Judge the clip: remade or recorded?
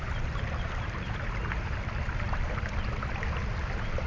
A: recorded